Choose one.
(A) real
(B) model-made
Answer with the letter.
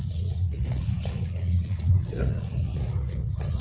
B